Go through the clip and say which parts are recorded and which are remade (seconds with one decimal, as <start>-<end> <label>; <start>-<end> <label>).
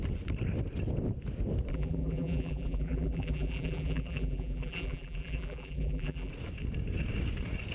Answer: 0.0-1.7 recorded; 1.7-6.3 remade; 6.3-7.7 recorded